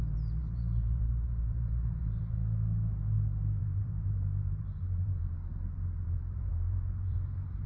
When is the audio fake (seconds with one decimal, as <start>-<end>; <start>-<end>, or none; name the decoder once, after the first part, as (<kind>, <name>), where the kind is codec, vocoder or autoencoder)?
0.0-2.4 (vocoder, BigVGAN v2); 3.6-7.7